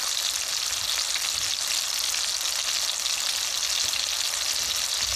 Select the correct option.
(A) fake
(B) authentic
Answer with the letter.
B